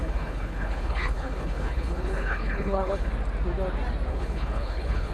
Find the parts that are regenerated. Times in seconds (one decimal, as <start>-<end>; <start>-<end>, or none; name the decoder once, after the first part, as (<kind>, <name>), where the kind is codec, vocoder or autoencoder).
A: 0.0-3.1 (codec, HILCodec); 4.1-5.1